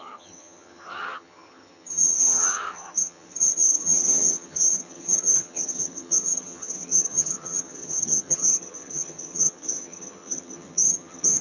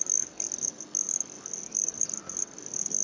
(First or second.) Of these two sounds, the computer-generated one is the first